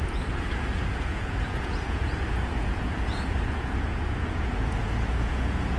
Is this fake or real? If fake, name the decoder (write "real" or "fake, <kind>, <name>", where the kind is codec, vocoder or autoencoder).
fake, vocoder, Vocos